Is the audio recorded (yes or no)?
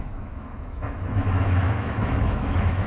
no